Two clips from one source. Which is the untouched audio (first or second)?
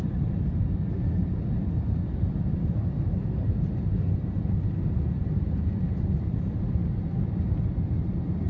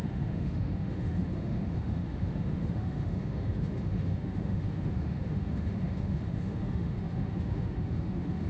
first